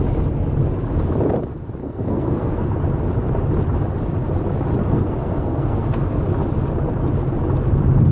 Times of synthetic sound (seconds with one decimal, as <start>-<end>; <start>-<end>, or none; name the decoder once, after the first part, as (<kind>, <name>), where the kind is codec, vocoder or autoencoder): 1.8-2.7 (codec, SNAC); 4.8-6.2